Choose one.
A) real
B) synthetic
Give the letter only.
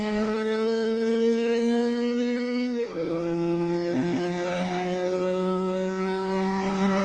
B